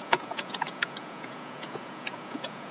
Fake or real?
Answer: fake